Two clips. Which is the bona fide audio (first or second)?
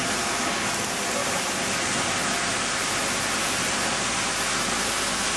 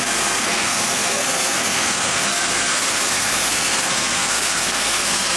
first